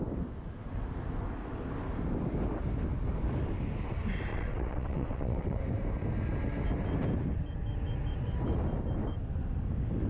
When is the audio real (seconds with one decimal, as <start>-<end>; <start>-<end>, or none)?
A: 0.0-4.3; 5.6-10.1

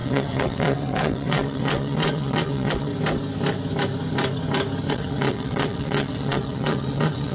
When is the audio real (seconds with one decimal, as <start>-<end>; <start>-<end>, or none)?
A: 2.9-4.9

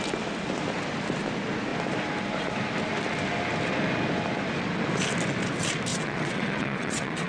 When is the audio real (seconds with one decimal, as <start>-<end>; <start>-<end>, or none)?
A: 0.0-5.9

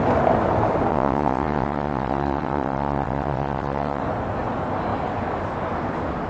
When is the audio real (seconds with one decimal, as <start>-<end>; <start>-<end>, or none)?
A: 0.0-0.9; 4.0-6.3

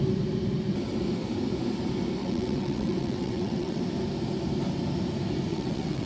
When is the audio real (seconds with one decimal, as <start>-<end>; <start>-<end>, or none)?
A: 0.0-2.2; 3.8-5.5

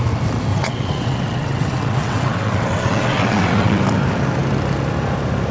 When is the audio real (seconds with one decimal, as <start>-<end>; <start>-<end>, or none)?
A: 0.0-0.5; 3.8-5.5

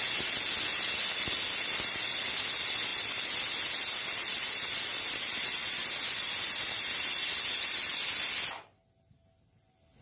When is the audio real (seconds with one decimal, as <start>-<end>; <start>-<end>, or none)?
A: 0.0-10.0